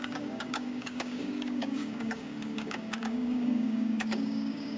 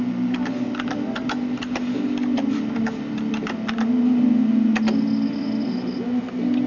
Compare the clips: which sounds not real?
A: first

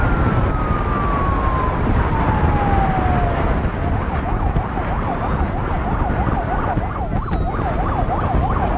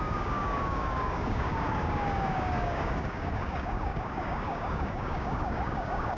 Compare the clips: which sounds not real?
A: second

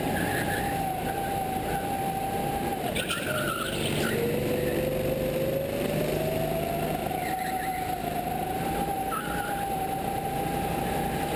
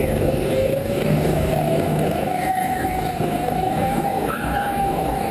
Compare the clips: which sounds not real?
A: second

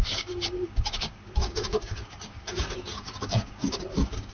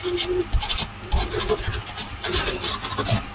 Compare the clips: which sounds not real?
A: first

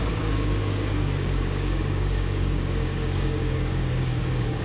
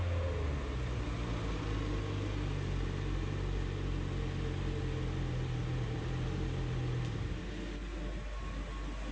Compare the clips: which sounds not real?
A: first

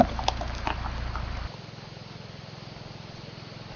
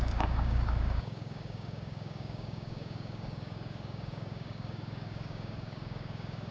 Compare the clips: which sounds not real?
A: second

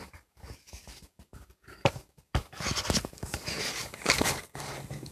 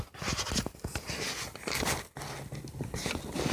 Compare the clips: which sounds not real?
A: first